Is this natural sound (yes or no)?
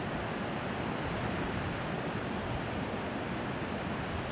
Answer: yes